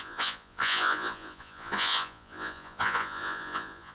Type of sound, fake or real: fake